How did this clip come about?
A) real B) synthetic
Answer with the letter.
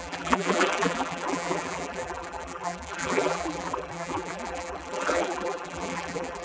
B